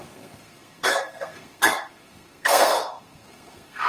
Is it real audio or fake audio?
fake